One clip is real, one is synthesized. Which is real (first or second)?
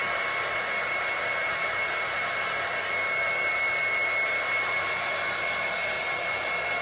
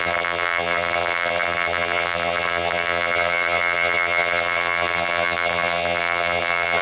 first